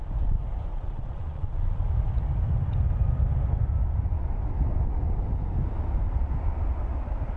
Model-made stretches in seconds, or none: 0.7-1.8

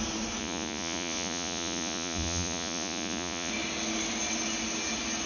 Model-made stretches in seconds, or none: 0.4-3.5

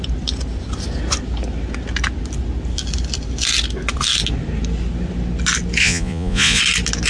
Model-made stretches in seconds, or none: 5.8-6.6

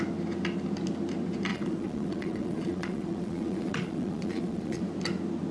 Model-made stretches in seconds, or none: 1.5-4.8

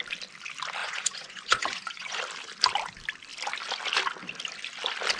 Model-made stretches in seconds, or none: 0.8-2.2

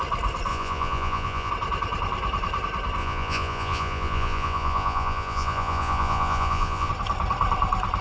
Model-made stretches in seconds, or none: 0.5-1.5; 3.0-6.9

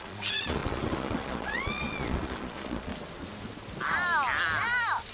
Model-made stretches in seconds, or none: 0.0-2.9

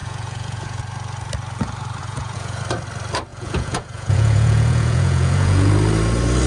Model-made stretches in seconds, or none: 0.0-0.8; 2.0-2.6; 3.3-5.7